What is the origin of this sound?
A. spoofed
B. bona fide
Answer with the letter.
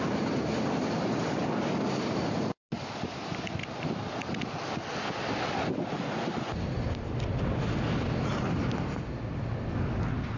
B